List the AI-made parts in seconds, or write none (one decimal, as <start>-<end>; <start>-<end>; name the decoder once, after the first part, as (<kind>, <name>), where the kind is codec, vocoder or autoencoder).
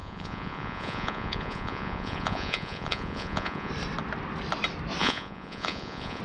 0.0-3.7 (vocoder, Vocos); 5.0-6.2